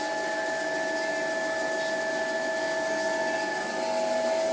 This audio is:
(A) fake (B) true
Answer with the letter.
B